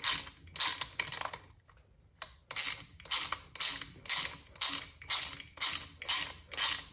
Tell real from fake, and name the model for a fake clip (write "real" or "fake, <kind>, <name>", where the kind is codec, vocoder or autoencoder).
real